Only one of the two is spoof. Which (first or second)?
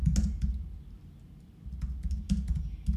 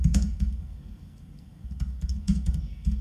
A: second